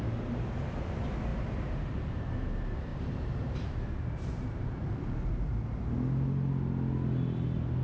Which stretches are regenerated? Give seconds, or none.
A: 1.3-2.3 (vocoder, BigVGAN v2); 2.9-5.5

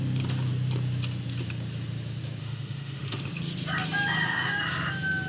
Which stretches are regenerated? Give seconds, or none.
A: 2.4-3.2 (autoencoder, DAC-VAE)

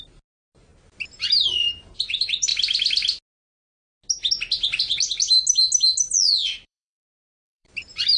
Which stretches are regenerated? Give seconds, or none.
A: 6.4-8.2 (vocoder, BigVGAN v2)

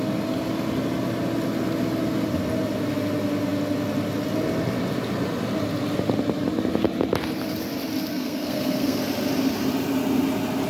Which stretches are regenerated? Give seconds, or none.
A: 8.1-9.0 (codec, SNAC)

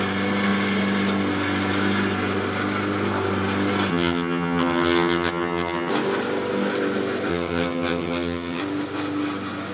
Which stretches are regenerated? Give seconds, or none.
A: 3.9-5.9 (vocoder, HiFi-GAN); 7.3-8.6

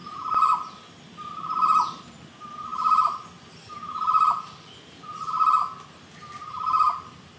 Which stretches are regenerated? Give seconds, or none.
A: none

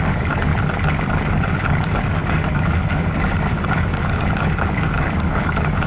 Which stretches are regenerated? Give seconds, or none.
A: 0.0-0.5 (codec, DAC); 1.3-5.9